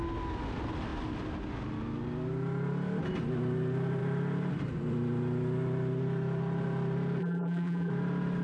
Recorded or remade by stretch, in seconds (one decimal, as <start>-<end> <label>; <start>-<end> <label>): 0.0-7.2 recorded; 7.2-7.9 remade; 7.9-8.4 recorded